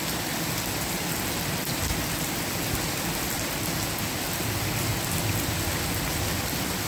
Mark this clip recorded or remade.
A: recorded